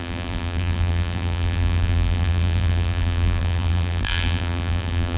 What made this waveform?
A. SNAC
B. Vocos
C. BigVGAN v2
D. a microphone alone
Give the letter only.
C